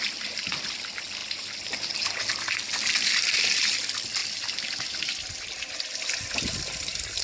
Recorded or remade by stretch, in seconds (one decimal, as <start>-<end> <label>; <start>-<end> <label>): 0.0-7.2 recorded